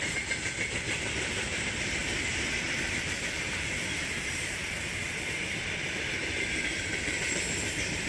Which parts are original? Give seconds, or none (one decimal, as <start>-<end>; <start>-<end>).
2.0-2.9; 4.6-5.6